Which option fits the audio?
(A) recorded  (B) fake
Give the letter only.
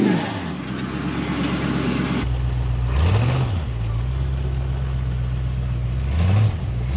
A